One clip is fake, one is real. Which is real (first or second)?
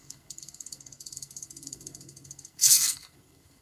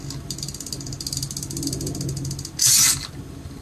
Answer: second